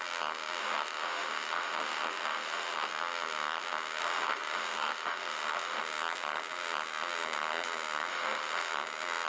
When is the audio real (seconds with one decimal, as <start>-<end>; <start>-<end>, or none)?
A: 0.0-0.6; 2.9-4.0; 5.8-8.1; 8.7-9.3